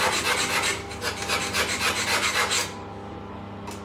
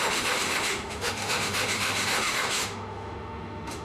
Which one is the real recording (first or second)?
first